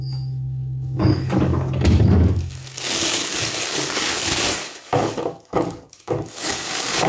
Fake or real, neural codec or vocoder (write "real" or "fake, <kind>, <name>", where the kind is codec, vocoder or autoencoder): fake, codec, DAC